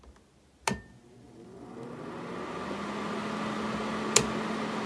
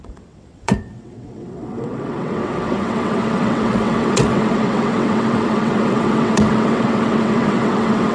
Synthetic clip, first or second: second